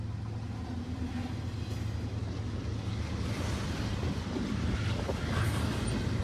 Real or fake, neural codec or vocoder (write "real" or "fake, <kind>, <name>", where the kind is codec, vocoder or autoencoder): real